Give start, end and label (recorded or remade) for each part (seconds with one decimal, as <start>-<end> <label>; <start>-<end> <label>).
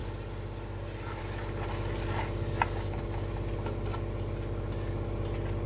0.0-5.7 recorded